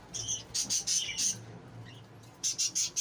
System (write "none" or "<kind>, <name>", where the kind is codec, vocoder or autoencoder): none